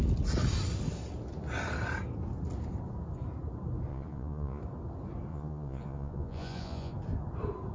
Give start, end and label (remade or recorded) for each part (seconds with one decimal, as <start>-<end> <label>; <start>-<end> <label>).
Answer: 0.0-3.9 recorded; 3.9-4.6 remade; 4.6-5.3 recorded; 5.3-6.9 remade; 6.9-7.7 recorded